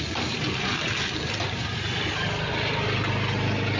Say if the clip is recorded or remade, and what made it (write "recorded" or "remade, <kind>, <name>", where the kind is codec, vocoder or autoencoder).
recorded